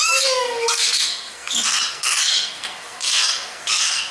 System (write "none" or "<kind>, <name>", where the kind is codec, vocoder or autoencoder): codec, SNAC